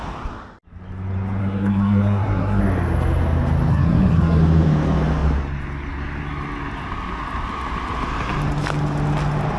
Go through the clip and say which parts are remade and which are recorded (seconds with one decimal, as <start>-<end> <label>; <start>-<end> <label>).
0.0-1.4 recorded; 1.4-2.6 remade; 2.6-3.7 recorded; 3.7-4.4 remade; 4.4-9.6 recorded